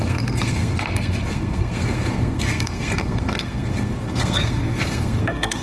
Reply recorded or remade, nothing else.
remade